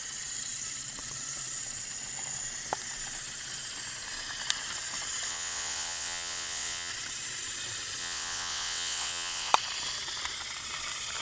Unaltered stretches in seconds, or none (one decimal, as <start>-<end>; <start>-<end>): 0.0-5.3; 6.9-8.0; 9.5-11.2